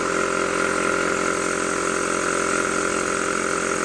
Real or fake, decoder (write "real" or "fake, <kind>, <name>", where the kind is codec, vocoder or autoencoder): real